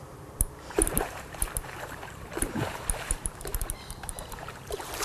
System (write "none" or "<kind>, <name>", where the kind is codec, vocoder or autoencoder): vocoder, BigVGAN v2